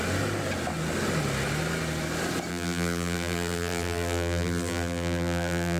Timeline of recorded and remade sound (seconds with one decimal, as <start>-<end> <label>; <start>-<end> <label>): 0.0-2.5 recorded; 2.5-5.8 remade